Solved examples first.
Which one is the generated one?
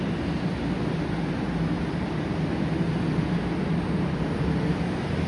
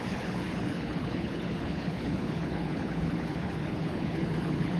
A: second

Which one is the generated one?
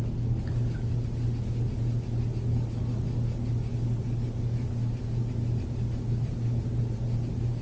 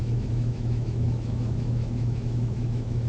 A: second